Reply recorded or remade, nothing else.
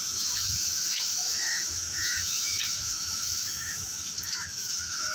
remade